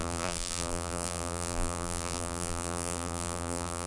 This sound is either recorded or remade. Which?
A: remade